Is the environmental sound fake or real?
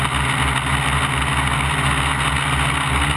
real